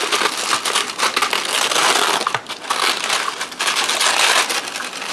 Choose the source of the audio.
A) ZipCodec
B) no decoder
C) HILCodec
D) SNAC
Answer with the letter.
B